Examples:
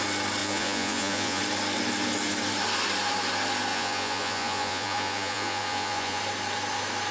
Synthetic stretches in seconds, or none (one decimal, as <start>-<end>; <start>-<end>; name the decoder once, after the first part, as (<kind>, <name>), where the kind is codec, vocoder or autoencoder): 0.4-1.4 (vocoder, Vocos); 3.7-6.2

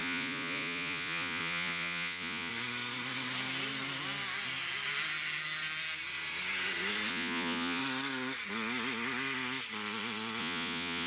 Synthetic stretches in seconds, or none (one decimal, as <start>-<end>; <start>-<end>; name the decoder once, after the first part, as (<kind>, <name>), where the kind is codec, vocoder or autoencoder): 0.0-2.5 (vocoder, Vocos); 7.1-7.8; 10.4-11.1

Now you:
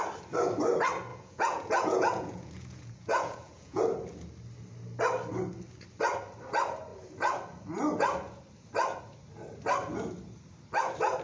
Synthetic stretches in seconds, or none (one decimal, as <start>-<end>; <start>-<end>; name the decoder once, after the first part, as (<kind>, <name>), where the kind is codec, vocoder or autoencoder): 1.1-3.8 (vocoder, Vocos)